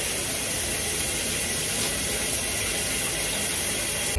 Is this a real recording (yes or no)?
yes